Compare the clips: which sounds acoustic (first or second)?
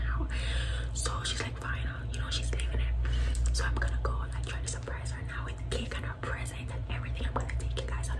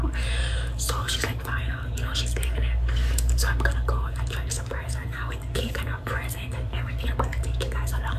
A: first